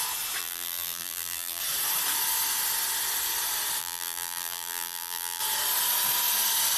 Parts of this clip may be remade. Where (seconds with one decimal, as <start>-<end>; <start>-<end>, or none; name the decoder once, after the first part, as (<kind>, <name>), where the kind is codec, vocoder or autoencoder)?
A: 0.4-1.6 (vocoder, BigVGAN v2); 3.8-5.4